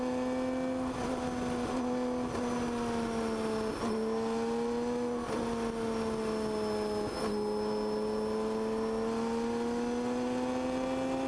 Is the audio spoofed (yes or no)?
no